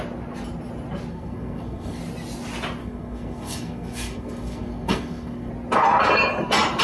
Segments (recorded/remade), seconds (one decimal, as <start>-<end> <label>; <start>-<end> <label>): 0.0-1.1 recorded; 1.1-2.0 remade; 2.0-2.8 recorded; 2.8-5.5 remade; 5.5-6.8 recorded